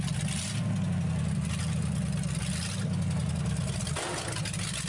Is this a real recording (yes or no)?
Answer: yes